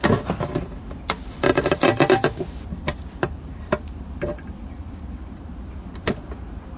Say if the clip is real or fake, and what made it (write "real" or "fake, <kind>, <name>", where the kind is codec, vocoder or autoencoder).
fake, vocoder, BigVGAN v2